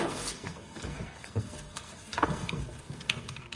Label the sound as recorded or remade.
remade